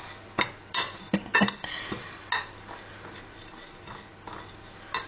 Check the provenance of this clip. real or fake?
real